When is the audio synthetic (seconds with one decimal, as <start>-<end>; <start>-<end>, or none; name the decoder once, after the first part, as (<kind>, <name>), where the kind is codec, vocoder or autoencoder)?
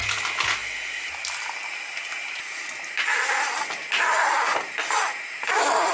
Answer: none